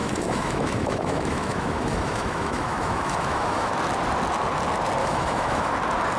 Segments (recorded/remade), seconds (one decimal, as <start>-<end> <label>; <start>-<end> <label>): 0.0-3.7 remade; 3.7-5.0 recorded; 5.0-5.7 remade; 5.7-6.2 recorded